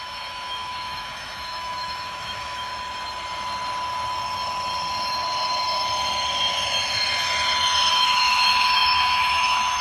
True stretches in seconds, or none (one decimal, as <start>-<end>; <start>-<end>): 2.7-7.9